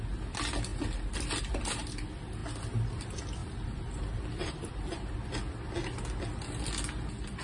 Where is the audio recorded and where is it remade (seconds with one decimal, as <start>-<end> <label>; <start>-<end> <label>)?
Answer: 0.0-3.4 recorded; 3.4-4.7 remade; 4.7-7.4 recorded